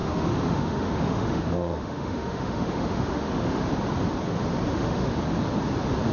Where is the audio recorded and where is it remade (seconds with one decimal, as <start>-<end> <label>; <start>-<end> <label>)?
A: 0.0-3.7 remade; 3.7-4.7 recorded; 4.7-5.2 remade; 5.2-6.1 recorded